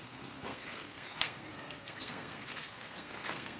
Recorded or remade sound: remade